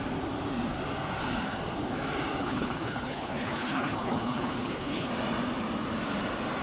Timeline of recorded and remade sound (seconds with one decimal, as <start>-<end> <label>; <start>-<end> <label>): 0.0-2.4 recorded; 2.4-5.1 remade; 5.1-6.6 recorded

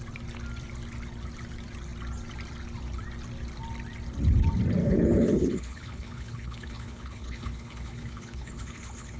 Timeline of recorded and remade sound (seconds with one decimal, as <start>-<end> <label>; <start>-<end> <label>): 0.0-4.8 recorded; 4.8-9.2 remade

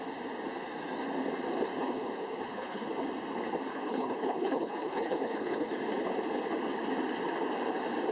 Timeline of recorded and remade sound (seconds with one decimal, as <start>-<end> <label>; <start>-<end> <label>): 0.0-1.8 recorded; 1.8-2.9 remade; 2.9-3.7 recorded; 3.7-5.7 remade; 5.7-8.1 recorded